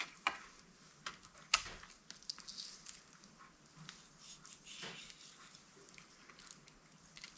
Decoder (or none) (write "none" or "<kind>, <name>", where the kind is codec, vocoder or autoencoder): none